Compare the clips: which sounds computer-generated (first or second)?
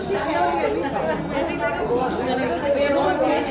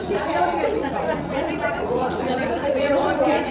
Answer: second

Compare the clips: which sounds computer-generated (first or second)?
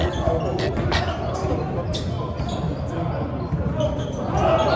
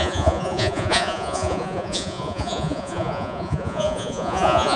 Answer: second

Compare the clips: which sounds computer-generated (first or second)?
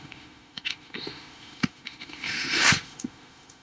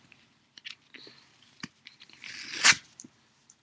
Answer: first